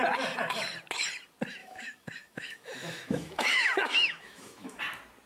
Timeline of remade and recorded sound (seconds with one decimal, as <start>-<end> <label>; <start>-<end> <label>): 0.0-1.6 recorded; 1.6-4.8 remade; 4.8-5.3 recorded